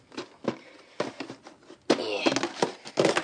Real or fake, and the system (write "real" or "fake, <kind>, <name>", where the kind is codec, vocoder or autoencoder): real